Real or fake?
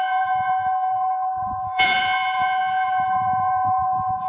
fake